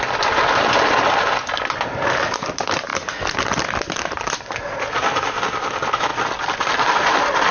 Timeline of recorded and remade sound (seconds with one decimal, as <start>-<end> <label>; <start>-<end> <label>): 0.0-7.5 recorded

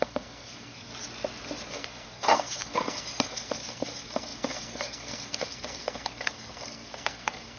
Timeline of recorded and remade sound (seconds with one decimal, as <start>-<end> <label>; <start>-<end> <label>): 0.0-0.9 remade; 0.9-1.7 recorded; 1.7-7.6 remade

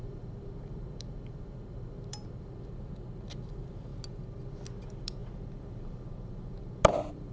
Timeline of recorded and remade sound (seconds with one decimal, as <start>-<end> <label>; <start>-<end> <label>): 0.0-3.9 remade; 3.9-4.8 recorded; 4.8-7.3 remade

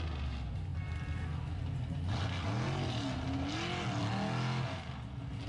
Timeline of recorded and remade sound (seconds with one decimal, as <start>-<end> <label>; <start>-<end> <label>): 0.0-5.5 recorded

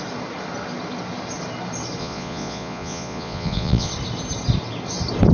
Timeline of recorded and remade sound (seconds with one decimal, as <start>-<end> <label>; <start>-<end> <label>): 0.0-2.0 recorded; 2.0-3.9 remade; 3.9-5.3 recorded

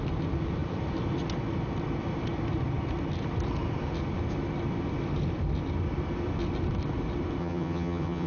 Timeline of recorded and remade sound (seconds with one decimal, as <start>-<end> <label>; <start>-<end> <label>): 0.0-7.4 recorded; 7.4-8.3 remade